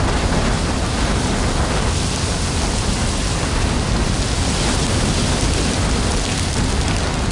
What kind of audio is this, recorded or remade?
recorded